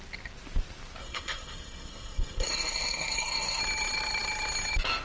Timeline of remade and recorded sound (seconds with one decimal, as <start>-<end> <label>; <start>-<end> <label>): 0.0-1.0 recorded; 1.0-3.6 remade; 3.6-5.0 recorded